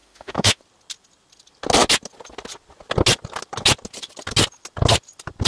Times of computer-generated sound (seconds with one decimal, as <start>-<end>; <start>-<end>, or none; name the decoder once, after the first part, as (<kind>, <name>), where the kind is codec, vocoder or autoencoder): 0.0-0.6 (autoencoder, DAC-VAE)